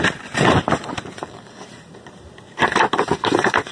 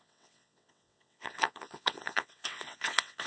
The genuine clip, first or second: first